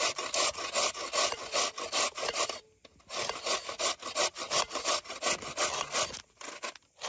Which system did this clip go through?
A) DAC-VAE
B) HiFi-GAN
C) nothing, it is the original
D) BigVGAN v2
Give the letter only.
C